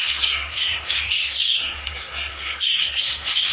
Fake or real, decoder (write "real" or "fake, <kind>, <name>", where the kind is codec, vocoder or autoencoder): fake, codec, SNAC